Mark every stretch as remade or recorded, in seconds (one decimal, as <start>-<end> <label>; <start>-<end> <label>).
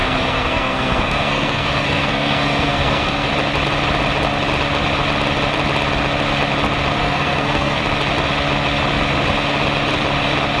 0.0-3.3 remade; 3.3-7.0 recorded; 7.0-7.8 remade; 7.8-10.6 recorded